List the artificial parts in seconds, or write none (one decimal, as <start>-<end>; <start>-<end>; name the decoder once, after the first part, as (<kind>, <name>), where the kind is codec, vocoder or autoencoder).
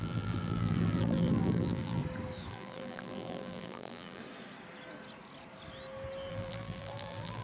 0.0-2.0 (vocoder, BigVGAN v2); 2.5-4.2; 6.3-7.4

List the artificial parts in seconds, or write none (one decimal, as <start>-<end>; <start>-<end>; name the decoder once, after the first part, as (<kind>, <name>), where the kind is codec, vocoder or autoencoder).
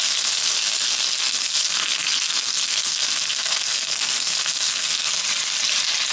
0.0-5.2 (codec, SNAC)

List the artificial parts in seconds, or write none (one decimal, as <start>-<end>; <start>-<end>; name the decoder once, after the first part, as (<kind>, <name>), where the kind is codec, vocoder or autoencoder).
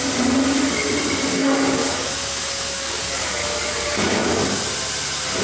1.4-4.6 (codec, DAC)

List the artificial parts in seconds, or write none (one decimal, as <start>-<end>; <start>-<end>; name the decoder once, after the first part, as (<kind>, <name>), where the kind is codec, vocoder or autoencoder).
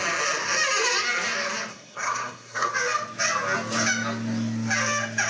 1.7-2.7 (codec, SNAC)